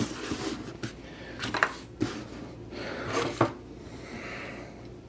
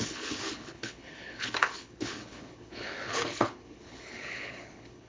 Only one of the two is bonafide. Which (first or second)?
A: first